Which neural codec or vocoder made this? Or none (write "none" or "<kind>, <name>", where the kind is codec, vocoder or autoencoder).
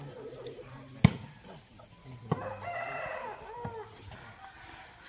none